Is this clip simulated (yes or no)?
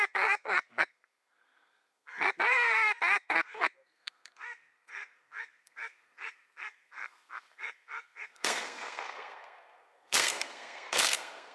yes